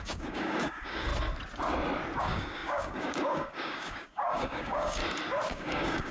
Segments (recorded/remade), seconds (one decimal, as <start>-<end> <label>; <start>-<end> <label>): 0.0-1.1 remade; 1.1-2.2 recorded; 2.2-5.0 remade; 5.0-5.5 recorded; 5.5-6.1 remade

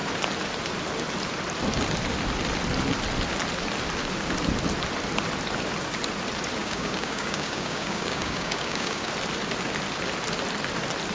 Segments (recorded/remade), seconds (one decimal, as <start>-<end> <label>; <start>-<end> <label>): 0.0-6.6 recorded; 6.6-9.1 remade; 9.1-11.1 recorded

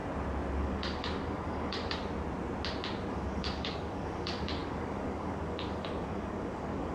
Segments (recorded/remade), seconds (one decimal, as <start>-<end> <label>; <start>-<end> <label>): 0.0-0.6 recorded; 0.6-2.0 remade; 2.0-3.1 recorded; 3.1-6.9 remade